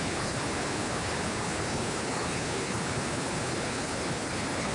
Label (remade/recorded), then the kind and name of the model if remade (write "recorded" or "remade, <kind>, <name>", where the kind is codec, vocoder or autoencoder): remade, codec, HILCodec